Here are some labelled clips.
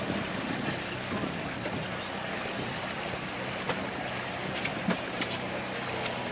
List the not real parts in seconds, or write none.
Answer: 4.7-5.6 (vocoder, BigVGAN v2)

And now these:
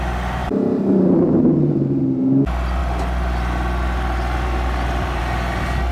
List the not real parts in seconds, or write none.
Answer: 0.4-2.0 (vocoder, BigVGAN v2)